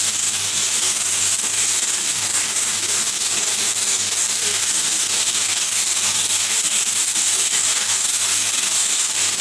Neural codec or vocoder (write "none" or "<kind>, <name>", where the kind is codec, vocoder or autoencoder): codec, DAC